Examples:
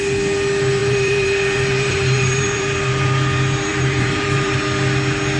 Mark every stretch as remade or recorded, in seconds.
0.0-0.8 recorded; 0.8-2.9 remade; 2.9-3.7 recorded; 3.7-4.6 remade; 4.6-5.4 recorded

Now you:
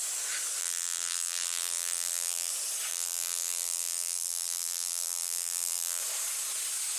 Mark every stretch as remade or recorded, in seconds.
0.0-0.6 recorded; 0.6-2.5 remade; 2.5-2.9 recorded; 2.9-6.0 remade; 6.0-7.0 recorded